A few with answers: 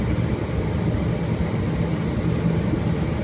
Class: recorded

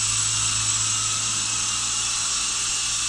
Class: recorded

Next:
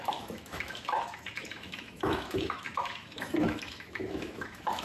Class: remade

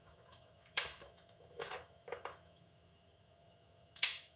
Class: remade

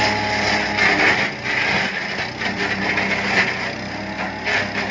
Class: recorded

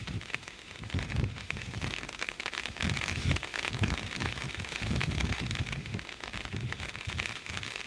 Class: remade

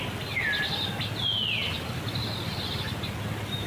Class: recorded